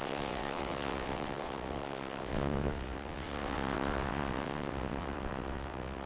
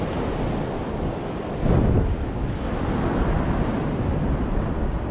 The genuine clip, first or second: second